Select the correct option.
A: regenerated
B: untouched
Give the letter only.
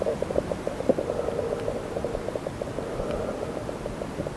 B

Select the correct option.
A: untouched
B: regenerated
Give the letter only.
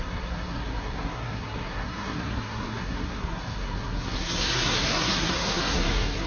B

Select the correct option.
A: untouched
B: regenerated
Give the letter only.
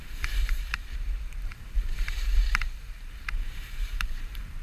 B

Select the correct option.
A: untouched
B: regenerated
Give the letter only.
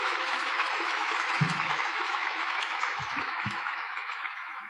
B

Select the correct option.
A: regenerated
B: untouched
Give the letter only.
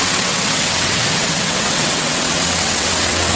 A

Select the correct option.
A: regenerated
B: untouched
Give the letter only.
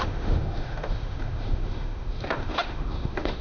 A